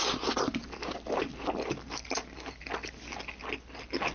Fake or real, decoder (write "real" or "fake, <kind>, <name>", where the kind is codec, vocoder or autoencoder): real